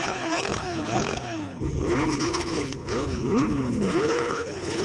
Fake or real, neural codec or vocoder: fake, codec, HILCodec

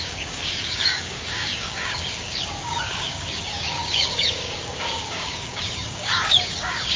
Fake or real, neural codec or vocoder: fake, codec, DAC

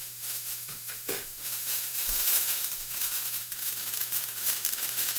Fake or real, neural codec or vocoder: fake, autoencoder, DAC-VAE